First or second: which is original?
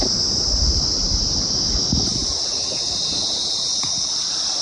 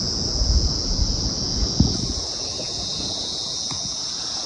first